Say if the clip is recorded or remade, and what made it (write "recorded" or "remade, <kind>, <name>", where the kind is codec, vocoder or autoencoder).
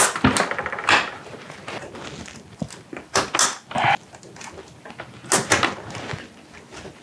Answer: recorded